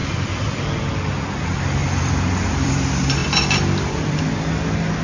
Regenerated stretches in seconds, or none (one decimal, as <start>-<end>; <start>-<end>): 0.0-0.9; 1.8-2.7; 3.2-4.2